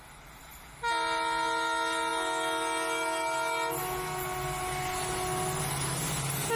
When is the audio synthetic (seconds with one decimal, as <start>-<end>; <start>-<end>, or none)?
none